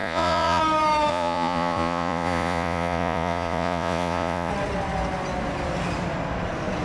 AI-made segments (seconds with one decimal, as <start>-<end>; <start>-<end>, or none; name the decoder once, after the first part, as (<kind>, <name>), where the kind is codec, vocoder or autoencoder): 0.0-0.6 (vocoder, Vocos); 1.1-4.5